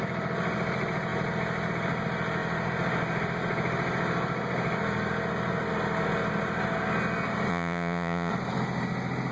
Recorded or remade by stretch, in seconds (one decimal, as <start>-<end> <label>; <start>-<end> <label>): 0.0-7.5 recorded; 7.5-8.3 remade; 8.3-9.3 recorded